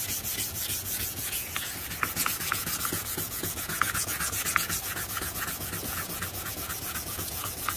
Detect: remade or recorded remade